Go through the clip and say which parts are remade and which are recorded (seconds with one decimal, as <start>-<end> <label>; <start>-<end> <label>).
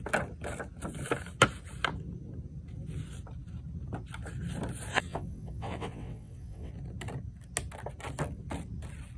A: 0.0-4.9 recorded; 4.9-6.7 remade; 6.7-9.2 recorded